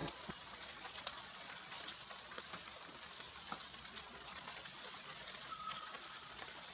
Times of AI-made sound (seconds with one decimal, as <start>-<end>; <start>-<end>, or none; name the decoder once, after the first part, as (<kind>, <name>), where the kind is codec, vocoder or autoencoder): 0.0-2.4 (vocoder, Vocos); 3.6-6.7